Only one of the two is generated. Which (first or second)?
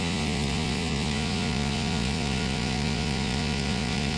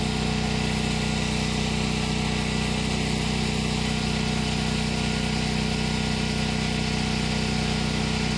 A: first